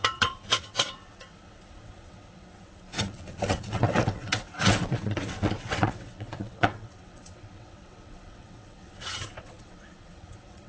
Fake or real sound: fake